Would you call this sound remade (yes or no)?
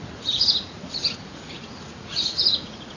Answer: yes